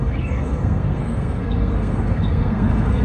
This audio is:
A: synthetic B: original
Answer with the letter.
A